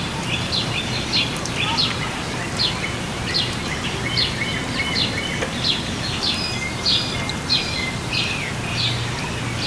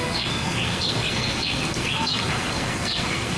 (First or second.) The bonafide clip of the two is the first